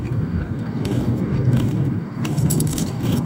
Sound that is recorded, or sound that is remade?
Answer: remade